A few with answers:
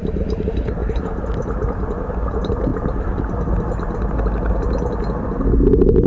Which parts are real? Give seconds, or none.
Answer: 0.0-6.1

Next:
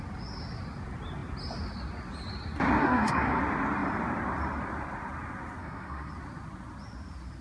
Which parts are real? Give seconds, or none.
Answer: 0.0-2.8; 3.4-5.6; 6.1-7.4

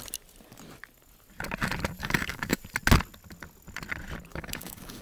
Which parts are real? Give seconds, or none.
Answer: 0.0-2.0; 2.6-4.3

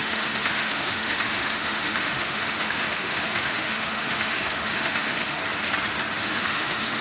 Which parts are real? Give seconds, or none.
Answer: 5.4-6.2

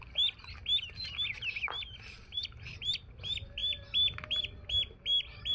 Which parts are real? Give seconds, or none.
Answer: 0.0-5.5

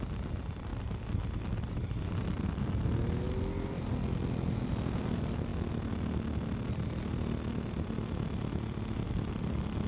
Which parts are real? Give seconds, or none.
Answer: 0.0-9.9

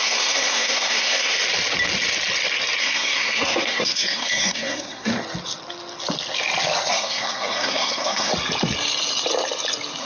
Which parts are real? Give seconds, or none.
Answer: 1.4-2.8; 5.1-6.9; 8.3-10.0